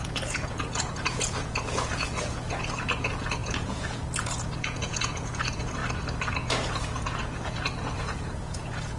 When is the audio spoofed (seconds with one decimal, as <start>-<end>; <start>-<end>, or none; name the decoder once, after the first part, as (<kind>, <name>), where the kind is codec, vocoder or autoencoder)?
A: 0.0-5.8 (vocoder, Vocos); 6.7-9.0